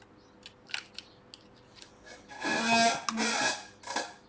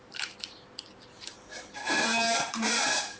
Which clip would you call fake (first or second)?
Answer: second